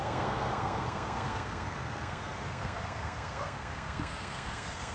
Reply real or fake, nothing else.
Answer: fake